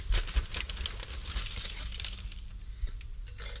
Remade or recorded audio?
remade